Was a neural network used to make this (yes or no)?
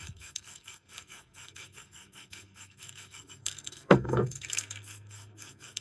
yes